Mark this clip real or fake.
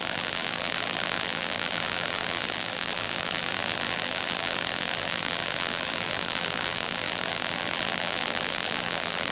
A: fake